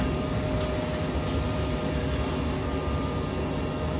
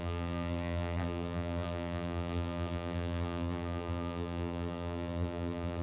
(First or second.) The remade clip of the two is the second